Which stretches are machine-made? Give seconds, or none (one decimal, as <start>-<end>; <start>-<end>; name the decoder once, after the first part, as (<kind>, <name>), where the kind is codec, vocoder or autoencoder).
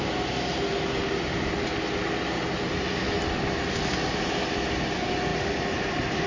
5.3-6.3 (vocoder, BigVGAN v2)